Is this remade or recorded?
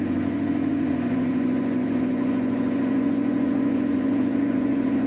remade